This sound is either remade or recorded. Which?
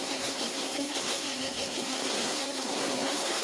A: remade